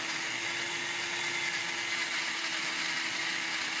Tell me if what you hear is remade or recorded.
recorded